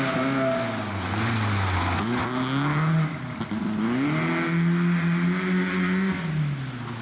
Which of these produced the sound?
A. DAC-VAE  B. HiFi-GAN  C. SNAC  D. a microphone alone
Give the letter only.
D